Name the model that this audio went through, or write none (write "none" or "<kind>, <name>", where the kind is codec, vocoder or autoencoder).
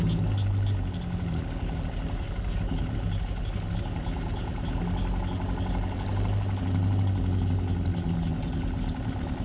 none